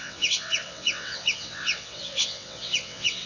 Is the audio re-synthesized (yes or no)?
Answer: yes